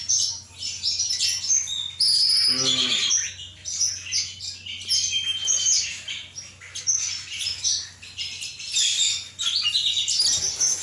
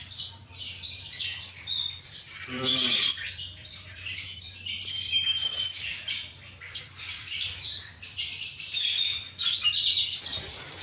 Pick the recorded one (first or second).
first